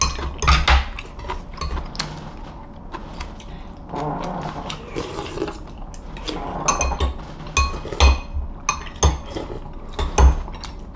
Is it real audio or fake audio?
real